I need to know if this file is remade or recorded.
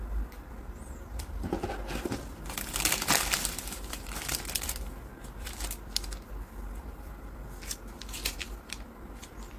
remade